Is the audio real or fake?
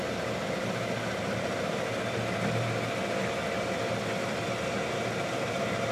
real